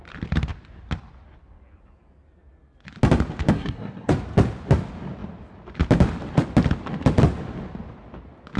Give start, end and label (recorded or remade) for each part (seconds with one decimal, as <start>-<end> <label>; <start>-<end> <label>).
0.0-3.5 recorded; 3.5-4.1 remade; 4.1-8.6 recorded